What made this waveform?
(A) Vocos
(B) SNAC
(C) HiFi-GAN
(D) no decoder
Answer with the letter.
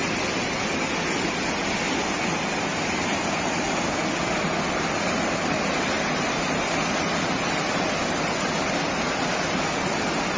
D